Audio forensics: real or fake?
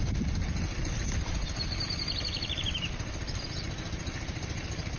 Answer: real